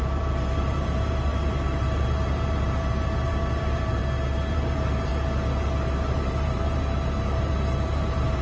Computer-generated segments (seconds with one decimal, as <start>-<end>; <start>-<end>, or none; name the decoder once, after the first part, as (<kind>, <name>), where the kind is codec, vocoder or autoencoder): 0.0-4.0 (vocoder, BigVGAN v2); 4.5-5.1; 6.0-8.4